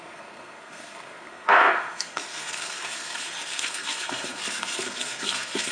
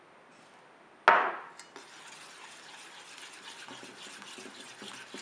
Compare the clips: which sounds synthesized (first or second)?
first